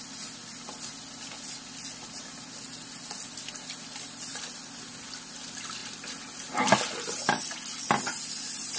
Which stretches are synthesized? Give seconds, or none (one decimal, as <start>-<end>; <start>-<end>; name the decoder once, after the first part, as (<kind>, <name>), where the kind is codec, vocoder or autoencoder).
none